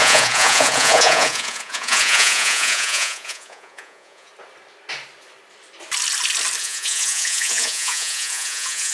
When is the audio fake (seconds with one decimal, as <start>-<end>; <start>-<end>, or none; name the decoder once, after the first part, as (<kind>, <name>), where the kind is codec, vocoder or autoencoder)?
0.0-4.3 (vocoder, Vocos); 6.6-8.9